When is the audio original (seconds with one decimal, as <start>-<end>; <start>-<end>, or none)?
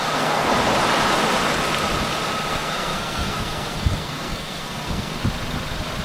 0.5-2.5; 5.2-6.0